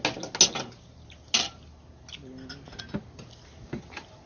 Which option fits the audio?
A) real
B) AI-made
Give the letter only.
A